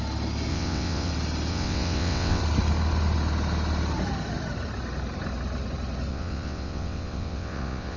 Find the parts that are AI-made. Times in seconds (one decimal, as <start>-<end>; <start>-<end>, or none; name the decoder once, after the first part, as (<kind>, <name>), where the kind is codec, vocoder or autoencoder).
0.5-1.1 (vocoder, WaveNeXt); 1.5-2.4; 6.1-8.0